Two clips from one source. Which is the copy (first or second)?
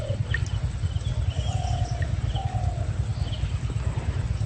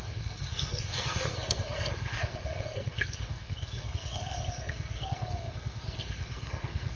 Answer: second